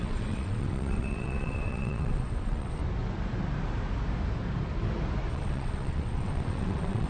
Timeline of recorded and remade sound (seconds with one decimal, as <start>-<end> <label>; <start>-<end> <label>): 0.0-2.8 remade; 2.8-5.3 recorded; 5.3-7.1 remade